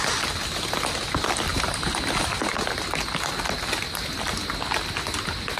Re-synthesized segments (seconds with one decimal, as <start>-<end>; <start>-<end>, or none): 1.5-2.2